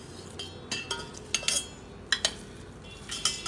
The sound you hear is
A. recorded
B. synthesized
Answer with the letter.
A